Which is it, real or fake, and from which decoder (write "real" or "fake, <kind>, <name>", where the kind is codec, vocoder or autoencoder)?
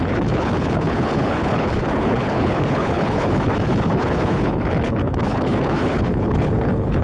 fake, codec, HILCodec